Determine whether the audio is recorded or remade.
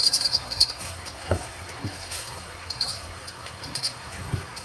remade